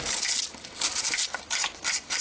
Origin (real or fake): real